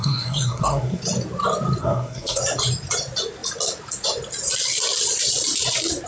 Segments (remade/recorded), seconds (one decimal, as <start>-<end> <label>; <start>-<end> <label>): 0.0-1.0 remade; 1.0-1.8 recorded; 1.8-2.4 remade; 2.4-6.1 recorded